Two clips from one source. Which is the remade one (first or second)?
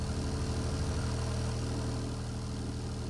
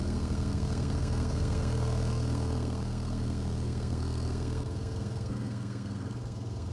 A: second